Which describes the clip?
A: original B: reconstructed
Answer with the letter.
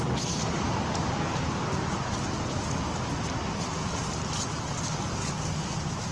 A